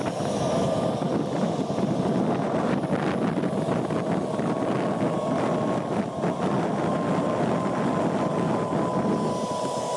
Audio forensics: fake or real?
real